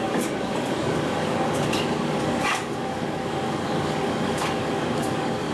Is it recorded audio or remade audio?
remade